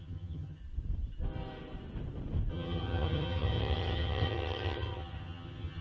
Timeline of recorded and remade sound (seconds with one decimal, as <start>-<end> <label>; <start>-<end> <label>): 0.0-0.6 remade; 0.6-2.5 recorded; 2.5-5.8 remade